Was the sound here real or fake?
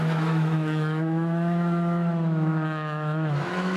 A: fake